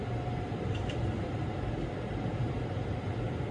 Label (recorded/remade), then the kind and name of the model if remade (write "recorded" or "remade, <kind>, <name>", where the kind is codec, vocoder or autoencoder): remade, vocoder, BigVGAN v2